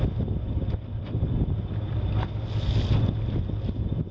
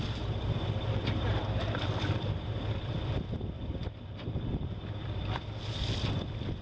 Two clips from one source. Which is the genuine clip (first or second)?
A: first